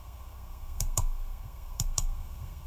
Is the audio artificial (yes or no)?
yes